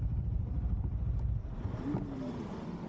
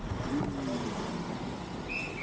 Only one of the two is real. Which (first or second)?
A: second